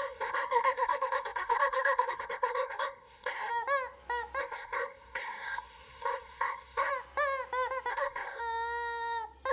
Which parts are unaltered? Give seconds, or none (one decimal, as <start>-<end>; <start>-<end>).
3.5-4.4; 6.9-7.9; 8.4-9.5